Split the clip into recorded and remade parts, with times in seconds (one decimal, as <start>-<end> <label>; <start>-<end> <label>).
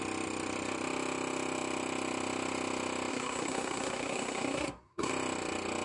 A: 0.0-3.1 recorded; 3.1-5.1 remade; 5.1-5.8 recorded